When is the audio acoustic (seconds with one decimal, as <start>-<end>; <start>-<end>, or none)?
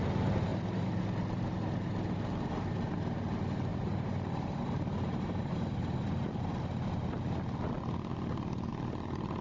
0.0-0.5; 1.0-3.7; 6.4-9.4